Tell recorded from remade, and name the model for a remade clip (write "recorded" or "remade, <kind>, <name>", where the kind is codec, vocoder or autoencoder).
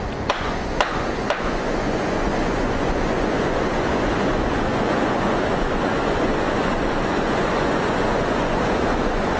remade, vocoder, Vocos